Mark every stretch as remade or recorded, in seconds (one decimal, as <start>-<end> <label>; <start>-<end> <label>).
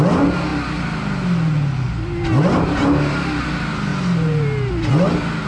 0.0-5.5 recorded